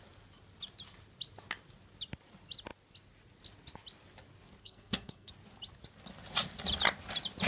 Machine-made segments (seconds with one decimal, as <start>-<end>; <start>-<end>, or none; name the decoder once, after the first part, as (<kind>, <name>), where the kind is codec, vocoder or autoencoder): 4.6-5.3 (codec, SNAC)